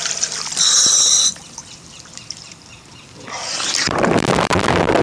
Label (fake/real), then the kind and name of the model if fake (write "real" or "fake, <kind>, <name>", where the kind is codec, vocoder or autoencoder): fake, vocoder, BigVGAN v2